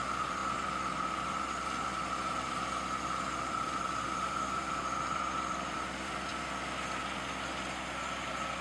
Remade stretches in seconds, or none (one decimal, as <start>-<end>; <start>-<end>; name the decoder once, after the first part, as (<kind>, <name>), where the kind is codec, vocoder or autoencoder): 0.0-6.3 (vocoder, BigVGAN v2)